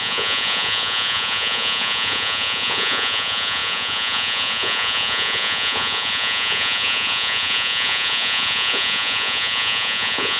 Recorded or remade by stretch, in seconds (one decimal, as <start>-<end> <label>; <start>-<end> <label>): 0.0-10.4 remade